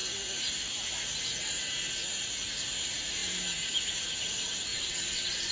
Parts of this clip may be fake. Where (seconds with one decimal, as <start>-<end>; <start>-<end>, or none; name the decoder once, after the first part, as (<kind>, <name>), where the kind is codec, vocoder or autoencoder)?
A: 4.7-5.5 (vocoder, WaveNeXt)